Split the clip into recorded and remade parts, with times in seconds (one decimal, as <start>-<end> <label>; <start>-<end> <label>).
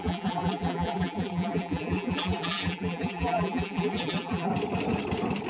0.0-4.5 remade; 4.5-5.5 recorded